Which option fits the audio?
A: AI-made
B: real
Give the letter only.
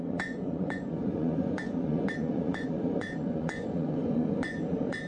A